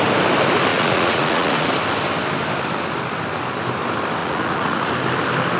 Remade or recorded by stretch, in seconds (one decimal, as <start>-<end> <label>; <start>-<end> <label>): 0.0-0.7 recorded; 0.7-1.7 remade; 1.7-4.2 recorded; 4.2-4.9 remade; 4.9-5.6 recorded